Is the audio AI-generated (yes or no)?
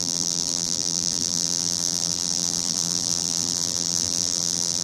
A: yes